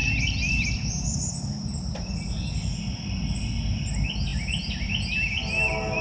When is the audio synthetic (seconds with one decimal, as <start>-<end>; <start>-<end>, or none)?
none